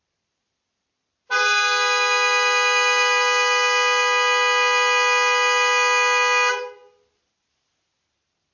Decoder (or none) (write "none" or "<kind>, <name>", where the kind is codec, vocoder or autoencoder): none